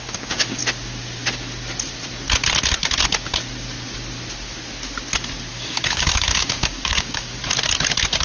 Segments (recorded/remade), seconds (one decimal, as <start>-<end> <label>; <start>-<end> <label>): 0.0-0.6 remade; 0.6-5.5 recorded; 5.5-7.4 remade; 7.4-8.2 recorded